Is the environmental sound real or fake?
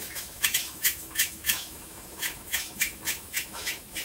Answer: fake